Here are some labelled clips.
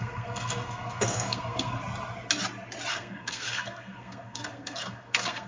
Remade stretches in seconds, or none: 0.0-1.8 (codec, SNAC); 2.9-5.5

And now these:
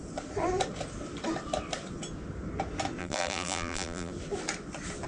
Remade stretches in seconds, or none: 3.0-4.1 (vocoder, BigVGAN v2)

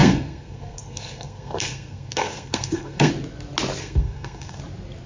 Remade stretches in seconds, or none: 0.0-3.1 (codec, SNAC); 3.8-4.6

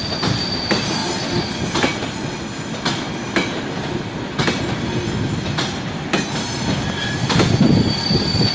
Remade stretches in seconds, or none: none

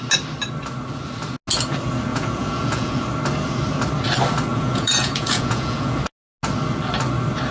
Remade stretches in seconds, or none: 2.1-3.0 (vocoder, Vocos); 4.5-6.0

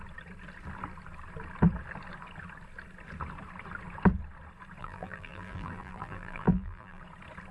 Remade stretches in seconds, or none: 4.8-7.0 (vocoder, BigVGAN v2)